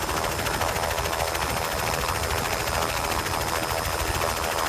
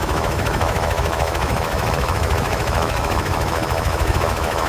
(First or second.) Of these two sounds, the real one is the first